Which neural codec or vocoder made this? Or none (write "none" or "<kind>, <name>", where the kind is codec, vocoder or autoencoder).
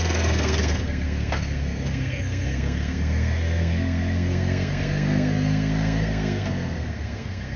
codec, SNAC